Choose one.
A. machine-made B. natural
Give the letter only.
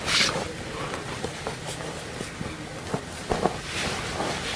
B